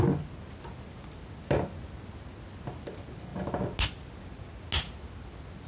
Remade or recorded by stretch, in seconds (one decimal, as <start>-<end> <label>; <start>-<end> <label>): 0.0-5.7 recorded